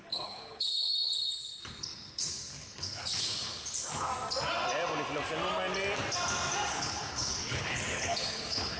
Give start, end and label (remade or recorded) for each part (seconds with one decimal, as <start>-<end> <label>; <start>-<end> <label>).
0.0-4.1 remade; 4.1-6.7 recorded; 6.7-8.8 remade